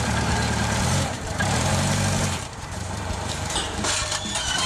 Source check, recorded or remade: remade